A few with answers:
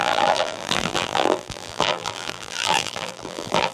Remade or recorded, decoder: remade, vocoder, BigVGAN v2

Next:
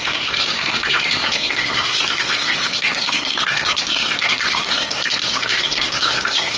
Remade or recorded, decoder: remade, codec, SNAC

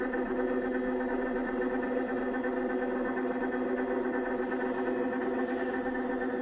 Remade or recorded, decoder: recorded